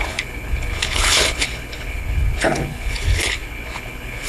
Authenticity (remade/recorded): remade